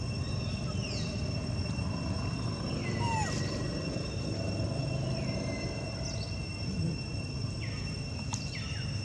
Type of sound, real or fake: real